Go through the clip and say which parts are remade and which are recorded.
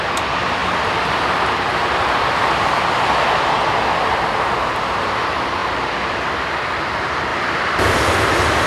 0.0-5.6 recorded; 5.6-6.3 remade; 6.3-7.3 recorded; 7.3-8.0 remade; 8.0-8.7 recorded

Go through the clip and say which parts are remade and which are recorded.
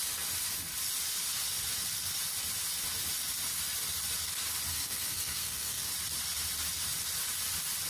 0.0-4.7 recorded; 4.7-5.9 remade; 5.9-7.9 recorded